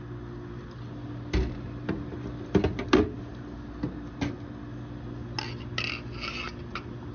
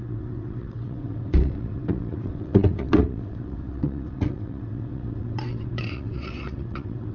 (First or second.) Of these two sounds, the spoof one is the second